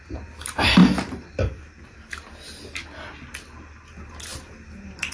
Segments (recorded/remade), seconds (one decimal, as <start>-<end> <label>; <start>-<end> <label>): 0.0-5.1 recorded